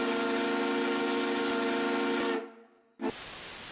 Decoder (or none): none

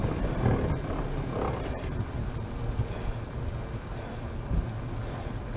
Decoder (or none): none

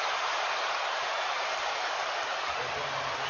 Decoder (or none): none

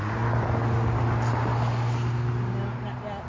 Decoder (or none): none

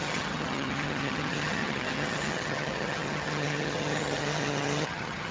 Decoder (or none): vocoder, HiFi-GAN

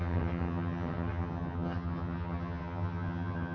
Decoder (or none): vocoder, HiFi-GAN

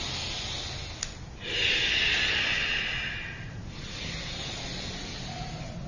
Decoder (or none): none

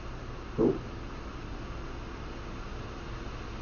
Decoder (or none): none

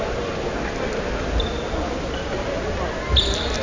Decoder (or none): none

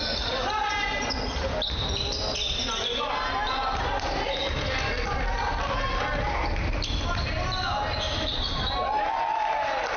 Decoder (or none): none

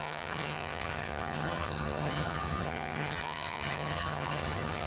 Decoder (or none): vocoder, HiFi-GAN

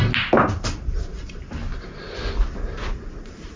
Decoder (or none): none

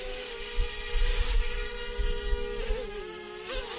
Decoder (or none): none